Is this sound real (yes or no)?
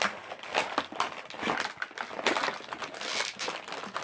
yes